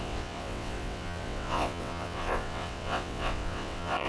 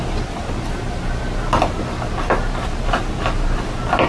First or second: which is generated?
first